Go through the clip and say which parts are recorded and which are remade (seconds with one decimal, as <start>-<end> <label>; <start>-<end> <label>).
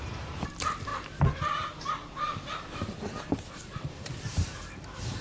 0.0-5.2 remade